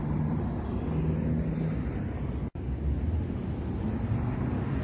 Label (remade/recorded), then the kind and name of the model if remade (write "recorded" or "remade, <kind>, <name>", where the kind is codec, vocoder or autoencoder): recorded